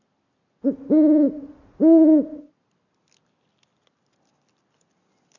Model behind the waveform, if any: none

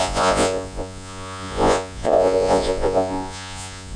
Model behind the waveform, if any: vocoder, Vocos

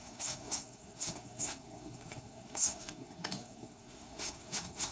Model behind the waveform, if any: codec, SNAC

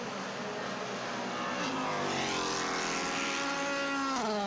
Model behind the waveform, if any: none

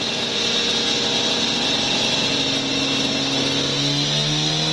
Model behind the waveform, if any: none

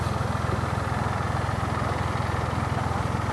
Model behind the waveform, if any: none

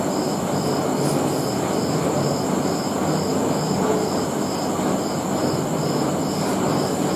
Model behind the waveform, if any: none